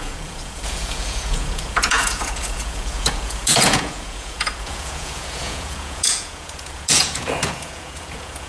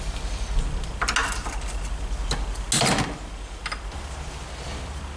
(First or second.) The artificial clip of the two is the first